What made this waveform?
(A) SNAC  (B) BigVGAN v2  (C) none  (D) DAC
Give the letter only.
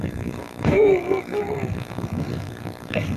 A